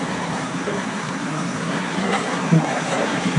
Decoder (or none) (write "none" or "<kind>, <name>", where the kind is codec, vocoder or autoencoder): codec, SNAC